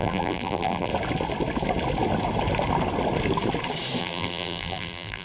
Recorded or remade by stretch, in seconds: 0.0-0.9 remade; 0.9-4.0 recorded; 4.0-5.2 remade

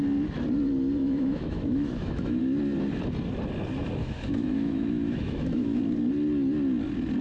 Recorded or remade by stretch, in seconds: 0.0-1.0 recorded; 1.0-2.4 remade; 2.4-4.0 recorded; 4.0-5.8 remade; 5.8-7.2 recorded

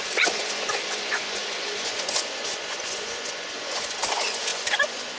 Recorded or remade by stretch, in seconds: 0.0-5.2 remade

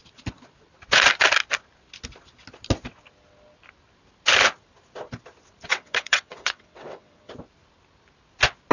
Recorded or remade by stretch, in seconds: 0.0-5.7 recorded; 5.7-7.3 remade; 7.3-8.7 recorded

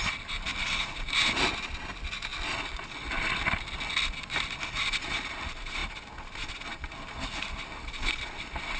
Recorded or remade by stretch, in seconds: 0.0-8.8 recorded

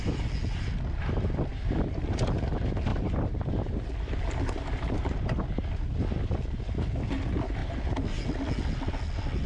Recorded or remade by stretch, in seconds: 0.0-9.5 recorded